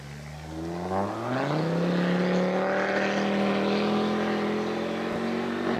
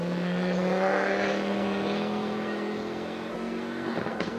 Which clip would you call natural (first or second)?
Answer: first